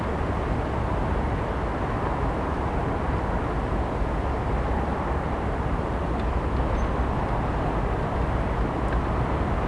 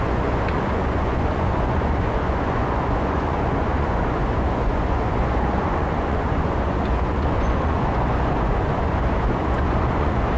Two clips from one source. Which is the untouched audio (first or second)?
first